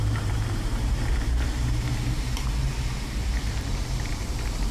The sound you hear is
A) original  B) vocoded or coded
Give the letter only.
B